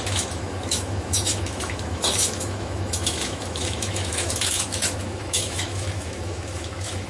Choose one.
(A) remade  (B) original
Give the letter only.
A